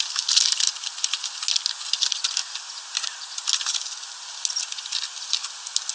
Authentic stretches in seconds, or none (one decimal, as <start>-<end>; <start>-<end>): 0.0-5.9